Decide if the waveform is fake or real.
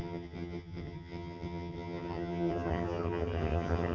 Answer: fake